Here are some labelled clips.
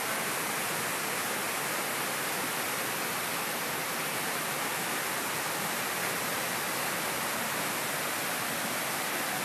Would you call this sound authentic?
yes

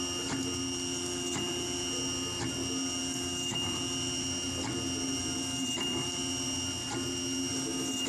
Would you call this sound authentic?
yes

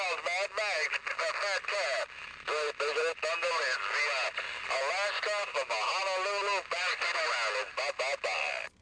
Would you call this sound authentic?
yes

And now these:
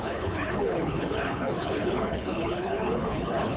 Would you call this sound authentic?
no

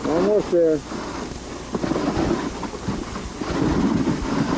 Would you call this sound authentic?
yes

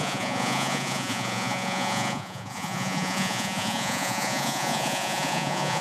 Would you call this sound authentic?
no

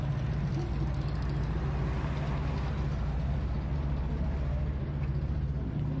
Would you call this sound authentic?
yes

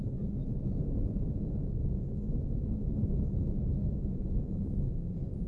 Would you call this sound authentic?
no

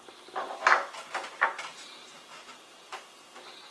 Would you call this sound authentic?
yes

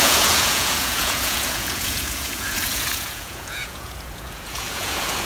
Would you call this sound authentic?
no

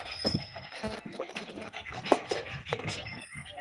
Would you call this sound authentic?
no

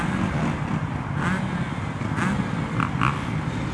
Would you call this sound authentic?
yes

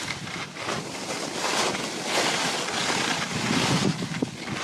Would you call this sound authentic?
yes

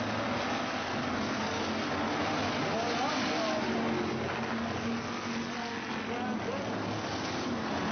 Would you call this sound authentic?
yes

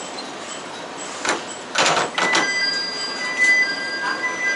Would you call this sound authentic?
yes